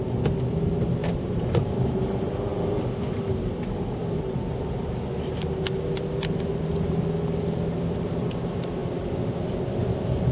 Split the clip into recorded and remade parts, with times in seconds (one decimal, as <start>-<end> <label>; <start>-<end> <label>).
0.0-1.0 recorded; 1.0-1.7 remade; 1.7-10.3 recorded